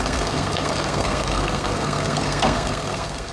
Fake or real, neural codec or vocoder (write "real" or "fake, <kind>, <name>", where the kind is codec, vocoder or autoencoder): fake, codec, SNAC